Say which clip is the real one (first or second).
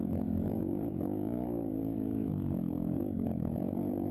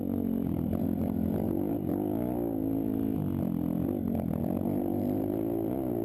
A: second